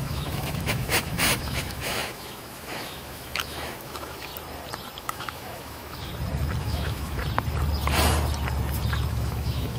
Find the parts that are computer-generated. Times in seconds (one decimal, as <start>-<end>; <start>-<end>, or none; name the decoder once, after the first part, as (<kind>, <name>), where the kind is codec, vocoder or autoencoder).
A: 0.0-4.3 (autoencoder, DAC-VAE); 5.0-6.1; 6.6-7.2; 9.1-9.8